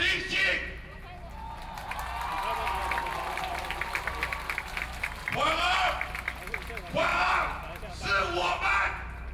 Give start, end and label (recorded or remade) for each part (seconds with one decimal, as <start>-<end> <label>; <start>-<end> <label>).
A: 0.0-9.3 recorded